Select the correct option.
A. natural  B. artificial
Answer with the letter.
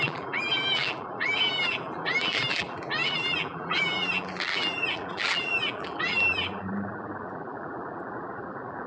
B